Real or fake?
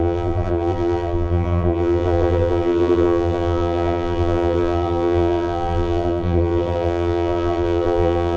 fake